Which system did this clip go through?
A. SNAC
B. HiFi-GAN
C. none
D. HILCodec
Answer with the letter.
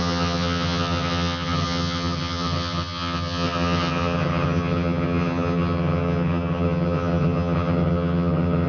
B